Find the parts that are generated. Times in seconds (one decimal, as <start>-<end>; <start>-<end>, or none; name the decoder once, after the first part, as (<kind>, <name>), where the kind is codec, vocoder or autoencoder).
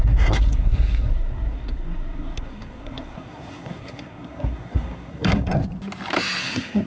0.0-5.6 (codec, SNAC); 6.4-6.9